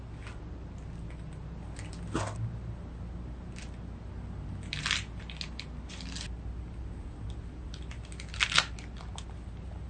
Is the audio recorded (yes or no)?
yes